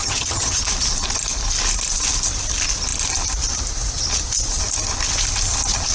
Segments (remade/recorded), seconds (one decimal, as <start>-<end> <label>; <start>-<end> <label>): 0.0-0.6 remade; 0.6-5.9 recorded